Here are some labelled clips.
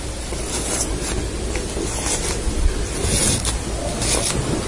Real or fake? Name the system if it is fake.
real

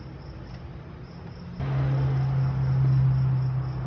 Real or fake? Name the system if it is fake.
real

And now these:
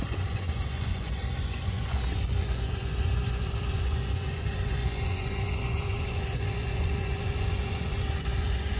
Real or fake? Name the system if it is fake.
fake, vocoder, Vocos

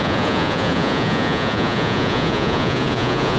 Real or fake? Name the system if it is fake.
fake, vocoder, Vocos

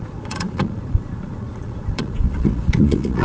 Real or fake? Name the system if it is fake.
fake, vocoder, Vocos